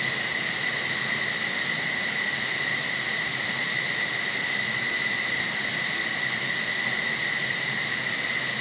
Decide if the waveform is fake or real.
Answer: real